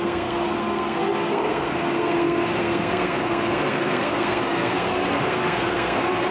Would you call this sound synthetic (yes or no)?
yes